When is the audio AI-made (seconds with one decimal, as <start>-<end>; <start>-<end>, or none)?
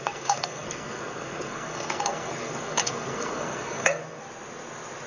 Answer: 0.0-4.2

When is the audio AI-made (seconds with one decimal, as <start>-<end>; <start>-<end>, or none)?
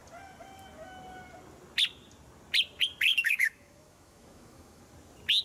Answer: 3.1-4.8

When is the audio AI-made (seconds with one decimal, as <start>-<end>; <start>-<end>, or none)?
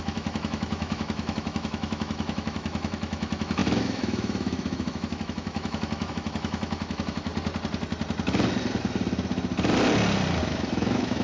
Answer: 0.0-7.3; 10.4-11.2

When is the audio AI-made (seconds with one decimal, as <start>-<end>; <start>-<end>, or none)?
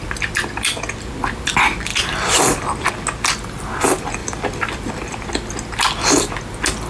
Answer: 4.2-5.3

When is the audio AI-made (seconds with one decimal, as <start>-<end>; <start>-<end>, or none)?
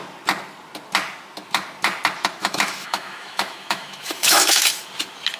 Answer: 2.4-4.8